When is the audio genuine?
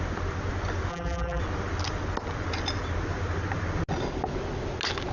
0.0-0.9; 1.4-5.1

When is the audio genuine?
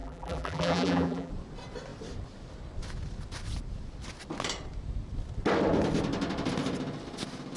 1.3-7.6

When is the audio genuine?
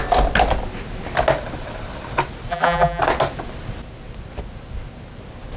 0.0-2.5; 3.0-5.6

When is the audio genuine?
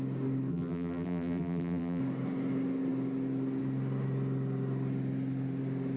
0.0-0.5; 2.0-6.0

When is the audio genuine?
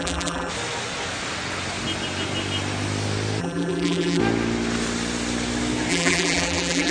0.5-3.4; 4.2-5.9